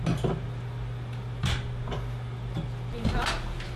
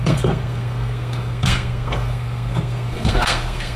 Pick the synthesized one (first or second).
second